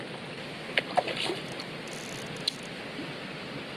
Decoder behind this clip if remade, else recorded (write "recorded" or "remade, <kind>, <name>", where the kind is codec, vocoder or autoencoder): recorded